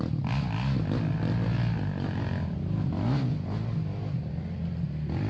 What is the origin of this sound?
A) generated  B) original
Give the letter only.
B